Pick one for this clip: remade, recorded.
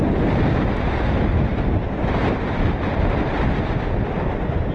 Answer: recorded